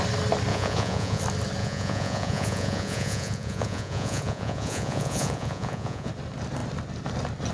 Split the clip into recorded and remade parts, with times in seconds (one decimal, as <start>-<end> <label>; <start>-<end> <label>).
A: 0.0-0.5 recorded; 0.5-1.2 remade; 1.2-1.6 recorded; 1.6-6.1 remade; 6.1-7.5 recorded